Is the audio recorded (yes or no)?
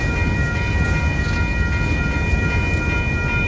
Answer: yes